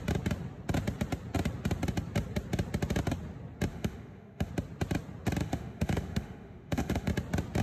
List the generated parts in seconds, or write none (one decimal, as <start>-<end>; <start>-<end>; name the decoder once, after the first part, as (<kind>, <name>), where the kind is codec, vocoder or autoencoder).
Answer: 3.7-4.5 (autoencoder, DAC-VAE); 5.4-7.1